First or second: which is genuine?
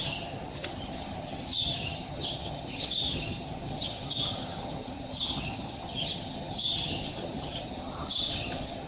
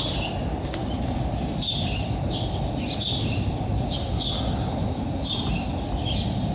second